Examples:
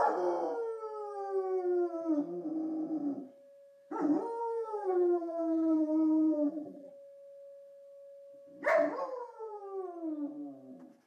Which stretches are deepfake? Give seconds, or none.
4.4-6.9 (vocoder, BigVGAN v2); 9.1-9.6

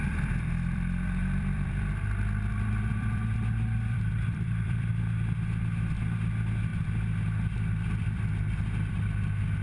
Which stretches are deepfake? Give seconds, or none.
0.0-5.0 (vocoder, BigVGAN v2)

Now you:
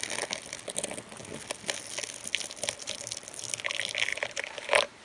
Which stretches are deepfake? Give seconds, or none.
4.1-5.0 (vocoder, BigVGAN v2)

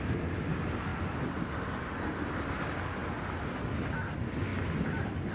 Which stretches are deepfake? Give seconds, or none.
0.9-1.8 (vocoder, BigVGAN v2); 4.5-5.3

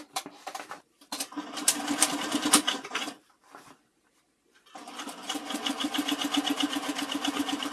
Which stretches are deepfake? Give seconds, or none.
0.0-7.7 (vocoder, BigVGAN v2)